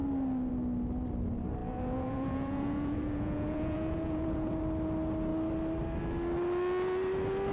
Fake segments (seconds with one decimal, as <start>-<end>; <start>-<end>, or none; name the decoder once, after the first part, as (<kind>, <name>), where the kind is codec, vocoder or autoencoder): 1.6-4.6 (vocoder, Vocos)